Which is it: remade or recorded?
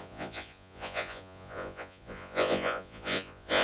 remade